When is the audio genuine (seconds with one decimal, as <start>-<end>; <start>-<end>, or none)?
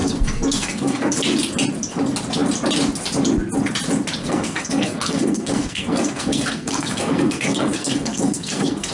1.1-4.2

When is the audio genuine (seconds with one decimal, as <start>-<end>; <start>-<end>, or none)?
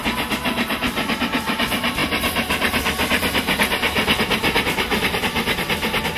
0.0-6.2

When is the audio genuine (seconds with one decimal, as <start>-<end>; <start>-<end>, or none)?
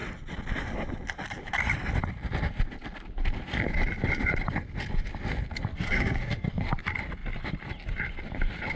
0.0-5.7; 6.6-8.8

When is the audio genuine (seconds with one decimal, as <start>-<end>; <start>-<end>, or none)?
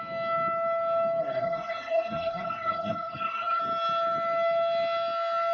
0.0-1.2; 3.6-5.5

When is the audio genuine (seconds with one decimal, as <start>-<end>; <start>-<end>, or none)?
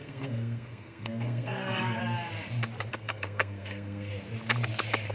2.0-2.9; 4.1-5.1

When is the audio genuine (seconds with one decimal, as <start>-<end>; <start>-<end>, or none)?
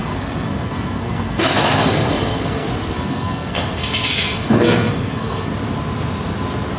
5.5-6.8